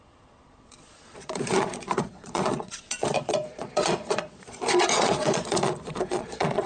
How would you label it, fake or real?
fake